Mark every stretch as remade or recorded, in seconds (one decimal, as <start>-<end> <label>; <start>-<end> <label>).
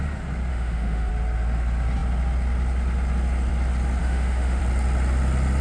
0.0-0.5 recorded; 0.5-1.1 remade; 1.1-4.0 recorded; 4.0-4.6 remade; 4.6-5.6 recorded